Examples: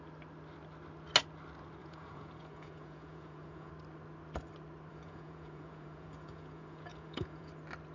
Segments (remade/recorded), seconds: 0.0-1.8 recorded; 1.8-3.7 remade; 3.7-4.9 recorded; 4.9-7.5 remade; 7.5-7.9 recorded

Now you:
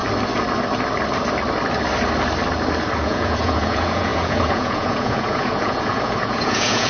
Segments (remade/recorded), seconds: 0.0-3.0 recorded; 3.0-6.9 remade